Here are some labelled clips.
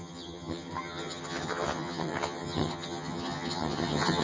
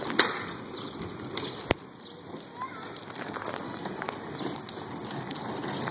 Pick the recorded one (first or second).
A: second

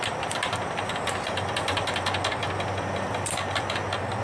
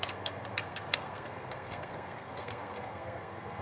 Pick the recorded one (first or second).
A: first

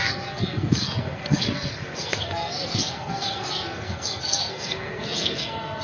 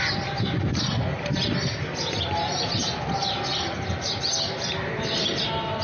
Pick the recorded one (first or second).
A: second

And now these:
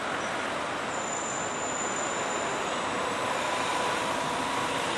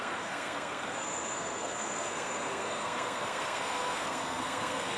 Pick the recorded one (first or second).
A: first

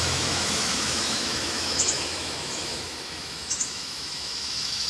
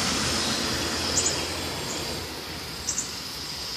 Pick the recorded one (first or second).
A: second